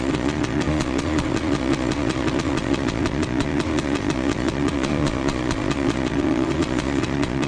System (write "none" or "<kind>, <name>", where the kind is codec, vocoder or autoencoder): vocoder, Vocos